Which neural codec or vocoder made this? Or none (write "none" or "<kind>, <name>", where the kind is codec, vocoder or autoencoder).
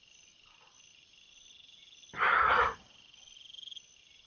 none